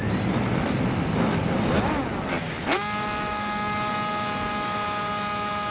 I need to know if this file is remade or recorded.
recorded